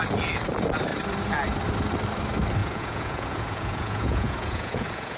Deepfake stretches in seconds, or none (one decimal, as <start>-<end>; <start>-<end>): 2.6-5.2